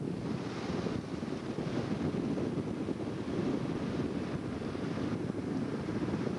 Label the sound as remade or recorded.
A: recorded